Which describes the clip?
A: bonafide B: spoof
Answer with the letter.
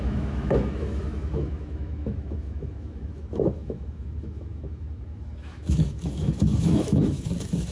B